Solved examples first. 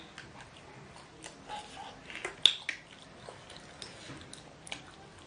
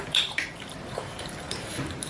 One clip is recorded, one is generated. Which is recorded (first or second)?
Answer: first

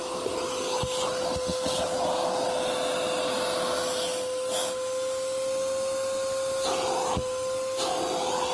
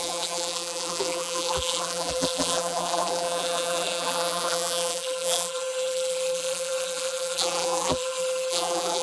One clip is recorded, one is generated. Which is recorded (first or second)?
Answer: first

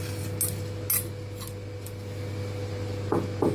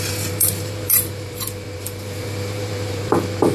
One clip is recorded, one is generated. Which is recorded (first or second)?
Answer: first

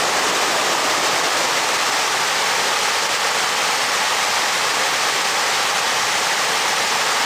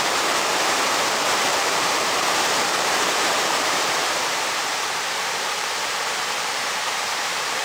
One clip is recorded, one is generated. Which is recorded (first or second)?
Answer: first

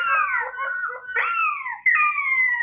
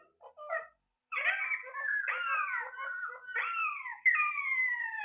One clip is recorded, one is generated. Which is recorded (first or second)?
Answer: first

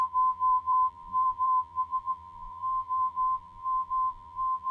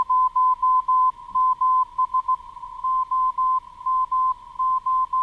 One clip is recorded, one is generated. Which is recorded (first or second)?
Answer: second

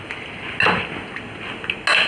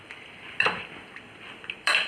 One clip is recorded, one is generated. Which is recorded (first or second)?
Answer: first